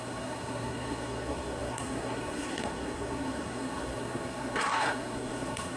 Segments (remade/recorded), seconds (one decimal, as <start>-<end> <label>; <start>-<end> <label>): 0.0-5.8 remade